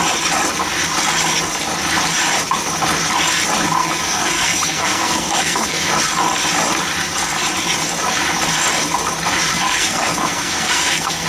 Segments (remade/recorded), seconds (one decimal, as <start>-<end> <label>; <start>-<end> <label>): 0.0-3.8 recorded; 3.8-5.9 remade; 5.9-9.5 recorded; 9.5-11.3 remade